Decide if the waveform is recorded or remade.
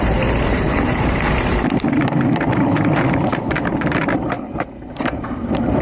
remade